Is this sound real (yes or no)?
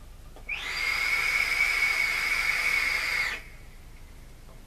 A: yes